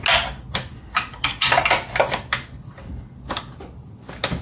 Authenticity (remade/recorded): recorded